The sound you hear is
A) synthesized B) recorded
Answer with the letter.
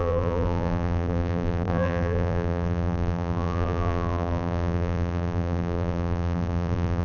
A